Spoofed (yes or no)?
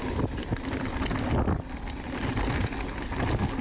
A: no